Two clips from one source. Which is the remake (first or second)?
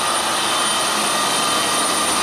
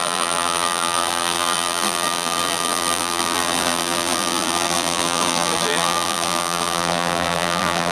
second